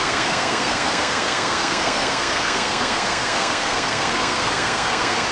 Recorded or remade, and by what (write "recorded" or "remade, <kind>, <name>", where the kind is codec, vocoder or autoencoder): remade, codec, SNAC